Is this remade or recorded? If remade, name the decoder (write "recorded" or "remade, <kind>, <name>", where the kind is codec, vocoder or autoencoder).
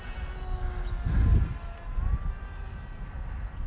recorded